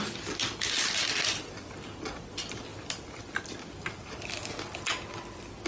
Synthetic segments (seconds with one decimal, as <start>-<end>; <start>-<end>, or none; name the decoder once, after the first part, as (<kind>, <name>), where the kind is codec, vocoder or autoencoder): 2.7-4.1 (vocoder, BigVGAN v2)

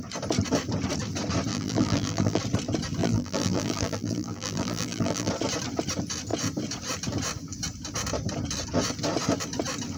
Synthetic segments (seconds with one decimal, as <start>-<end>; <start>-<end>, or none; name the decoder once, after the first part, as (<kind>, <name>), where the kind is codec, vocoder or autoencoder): 1.5-2.4 (vocoder, BigVGAN v2); 3.0-5.3

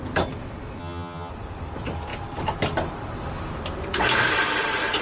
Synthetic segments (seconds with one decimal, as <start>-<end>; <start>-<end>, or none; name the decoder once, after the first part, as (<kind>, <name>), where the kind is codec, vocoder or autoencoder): 0.8-1.3 (vocoder, HiFi-GAN)

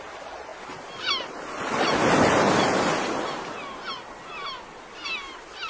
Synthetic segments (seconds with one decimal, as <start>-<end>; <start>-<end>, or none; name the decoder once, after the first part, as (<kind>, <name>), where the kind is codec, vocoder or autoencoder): none

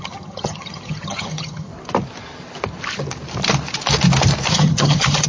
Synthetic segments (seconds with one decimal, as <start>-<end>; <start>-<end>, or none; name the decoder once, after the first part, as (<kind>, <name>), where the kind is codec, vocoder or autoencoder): 0.0-1.7 (vocoder, HiFi-GAN); 4.5-5.3

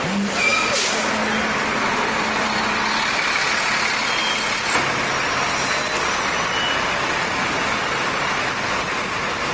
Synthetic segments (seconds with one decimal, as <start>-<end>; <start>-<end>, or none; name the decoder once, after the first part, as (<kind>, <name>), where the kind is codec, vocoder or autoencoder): none

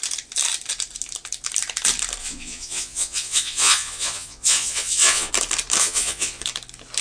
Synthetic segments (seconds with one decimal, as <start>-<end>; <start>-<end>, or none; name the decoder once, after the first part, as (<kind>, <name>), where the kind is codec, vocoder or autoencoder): 2.2-5.3 (vocoder, Vocos); 5.8-6.4

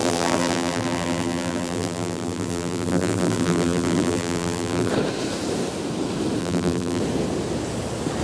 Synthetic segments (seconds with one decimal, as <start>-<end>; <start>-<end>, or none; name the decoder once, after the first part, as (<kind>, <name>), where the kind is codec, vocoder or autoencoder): 0.0-4.9 (vocoder, BigVGAN v2); 6.4-7.0